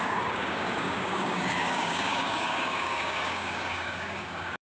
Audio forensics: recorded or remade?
remade